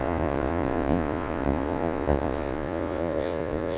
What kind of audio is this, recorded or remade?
remade